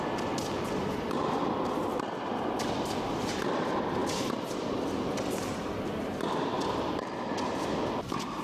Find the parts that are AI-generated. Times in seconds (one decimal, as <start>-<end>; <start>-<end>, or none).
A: 0.8-1.4; 4.0-4.7